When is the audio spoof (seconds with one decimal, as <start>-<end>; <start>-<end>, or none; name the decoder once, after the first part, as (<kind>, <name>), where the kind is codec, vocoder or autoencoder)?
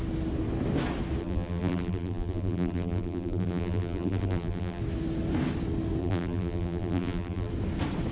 1.2-4.8 (vocoder, BigVGAN v2); 6.0-7.5